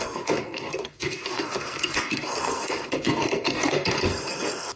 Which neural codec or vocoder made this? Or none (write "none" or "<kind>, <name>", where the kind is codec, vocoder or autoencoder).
codec, SNAC